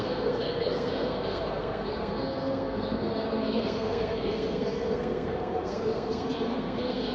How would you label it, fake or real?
fake